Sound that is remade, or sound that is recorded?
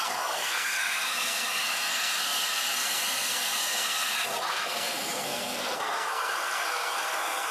remade